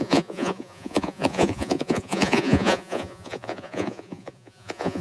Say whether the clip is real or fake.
fake